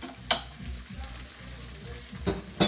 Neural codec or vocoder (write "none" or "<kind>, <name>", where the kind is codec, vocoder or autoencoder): none